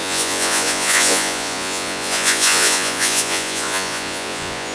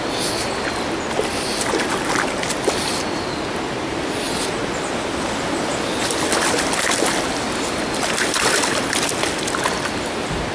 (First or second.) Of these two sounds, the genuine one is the second